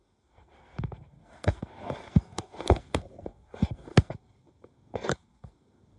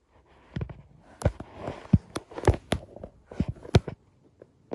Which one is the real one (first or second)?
second